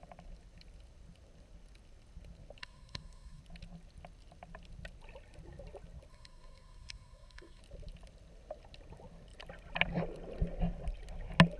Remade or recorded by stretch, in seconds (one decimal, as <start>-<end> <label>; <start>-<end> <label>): 0.0-2.6 recorded; 2.6-3.4 remade; 3.4-6.1 recorded; 6.1-7.6 remade; 7.6-11.6 recorded

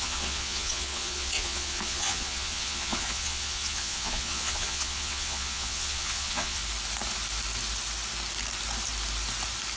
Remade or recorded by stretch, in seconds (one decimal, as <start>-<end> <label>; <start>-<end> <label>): 0.0-6.6 remade; 6.6-9.8 recorded

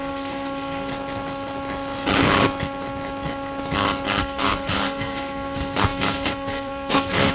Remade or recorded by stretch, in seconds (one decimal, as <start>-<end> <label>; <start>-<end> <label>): 0.0-0.9 remade; 0.9-4.2 recorded; 4.2-7.3 remade